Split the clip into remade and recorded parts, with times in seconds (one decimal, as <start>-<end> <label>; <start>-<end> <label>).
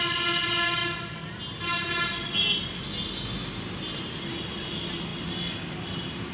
0.0-6.3 recorded